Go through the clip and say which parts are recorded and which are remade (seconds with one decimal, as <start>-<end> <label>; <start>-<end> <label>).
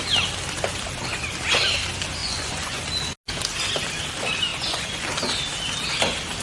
0.0-2.2 recorded; 2.2-2.8 remade; 2.8-4.5 recorded; 4.5-5.0 remade; 5.0-6.4 recorded